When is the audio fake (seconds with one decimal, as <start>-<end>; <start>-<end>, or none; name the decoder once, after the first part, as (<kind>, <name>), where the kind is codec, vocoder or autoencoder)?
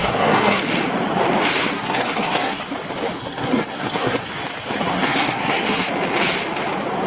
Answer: 0.0-0.6 (codec, SNAC); 1.6-2.6; 3.2-4.3; 4.9-5.9